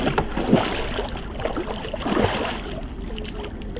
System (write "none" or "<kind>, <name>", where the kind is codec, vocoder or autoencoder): none